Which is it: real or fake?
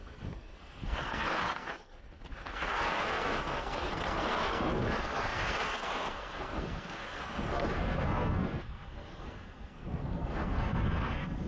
fake